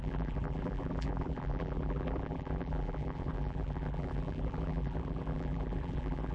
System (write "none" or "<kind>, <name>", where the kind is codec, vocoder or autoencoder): vocoder, BigVGAN v2